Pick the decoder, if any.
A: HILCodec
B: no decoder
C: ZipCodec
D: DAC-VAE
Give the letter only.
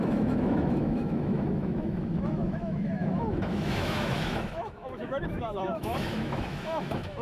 D